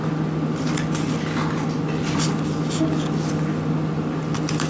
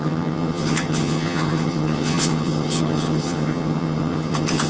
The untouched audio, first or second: first